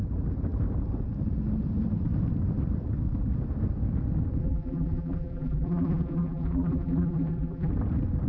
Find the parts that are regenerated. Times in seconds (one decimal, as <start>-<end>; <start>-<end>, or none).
4.4-7.7